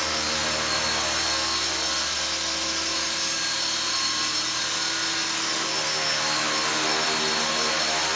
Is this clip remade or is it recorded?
recorded